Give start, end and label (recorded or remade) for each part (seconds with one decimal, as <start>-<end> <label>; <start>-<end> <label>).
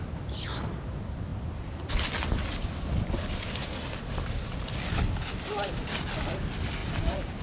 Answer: 0.0-1.3 recorded; 1.3-1.9 remade; 1.9-3.6 recorded; 3.6-4.5 remade; 4.5-6.8 recorded; 6.8-7.4 remade